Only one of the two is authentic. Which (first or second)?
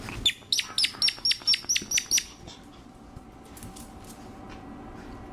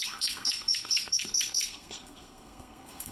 first